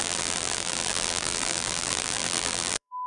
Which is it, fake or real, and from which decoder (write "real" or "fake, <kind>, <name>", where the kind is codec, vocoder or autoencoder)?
fake, vocoder, BigVGAN v2